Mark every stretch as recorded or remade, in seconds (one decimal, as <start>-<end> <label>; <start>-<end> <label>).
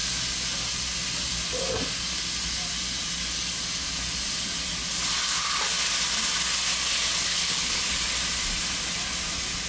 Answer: 0.0-7.3 recorded; 7.3-7.8 remade; 7.8-9.7 recorded